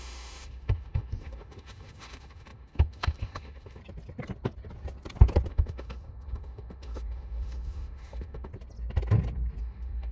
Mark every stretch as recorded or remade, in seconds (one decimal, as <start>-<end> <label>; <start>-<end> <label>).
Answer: 0.0-3.8 remade; 3.8-5.5 recorded; 5.5-8.5 remade; 8.5-9.6 recorded; 9.6-10.1 remade